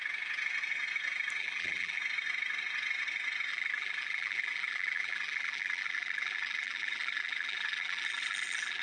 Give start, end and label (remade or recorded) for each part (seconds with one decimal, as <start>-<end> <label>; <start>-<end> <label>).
0.0-1.4 recorded; 1.4-2.0 remade; 2.0-3.5 recorded; 3.5-8.8 remade